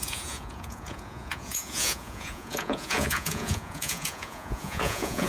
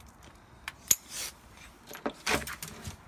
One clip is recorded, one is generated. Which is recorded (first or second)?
second